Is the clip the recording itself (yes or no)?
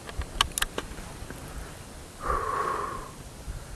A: yes